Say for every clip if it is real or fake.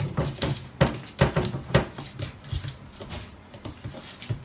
real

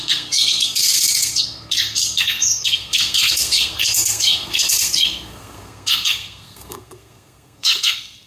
fake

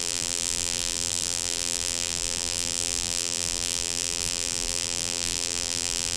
fake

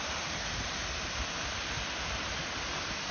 real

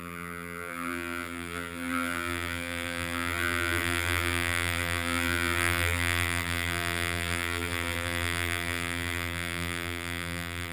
fake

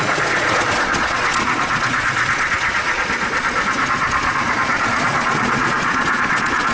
fake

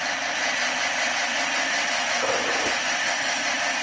real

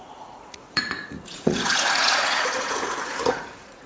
fake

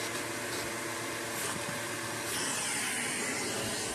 real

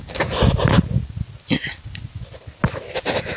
real